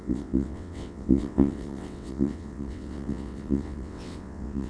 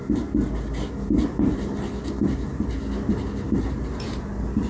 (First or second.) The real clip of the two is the second